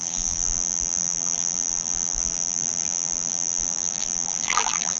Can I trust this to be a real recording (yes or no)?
no